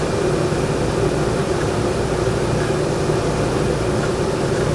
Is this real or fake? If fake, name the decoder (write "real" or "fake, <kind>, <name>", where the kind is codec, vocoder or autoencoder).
real